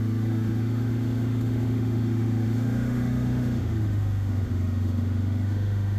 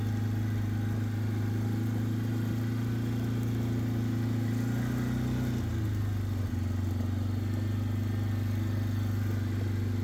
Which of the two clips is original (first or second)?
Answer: second